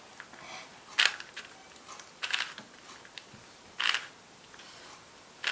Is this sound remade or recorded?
recorded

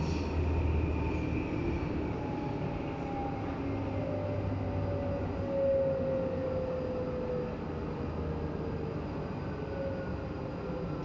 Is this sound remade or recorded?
recorded